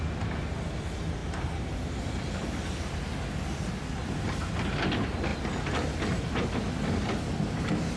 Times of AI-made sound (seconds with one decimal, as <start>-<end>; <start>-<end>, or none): none